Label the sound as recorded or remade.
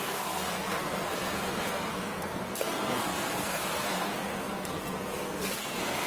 remade